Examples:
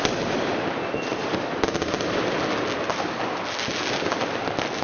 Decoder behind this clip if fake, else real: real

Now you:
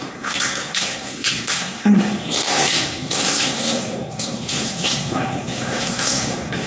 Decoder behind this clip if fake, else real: fake, codec, SNAC